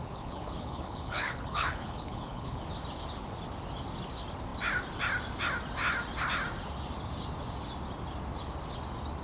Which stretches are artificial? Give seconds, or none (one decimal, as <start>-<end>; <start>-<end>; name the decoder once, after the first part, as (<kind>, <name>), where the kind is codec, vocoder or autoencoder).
0.0-2.6 (codec, HILCodec)